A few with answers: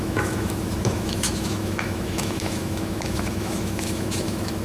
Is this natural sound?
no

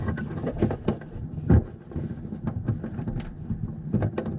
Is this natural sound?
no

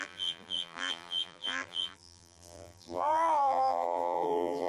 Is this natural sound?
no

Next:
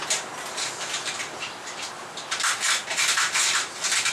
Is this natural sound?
yes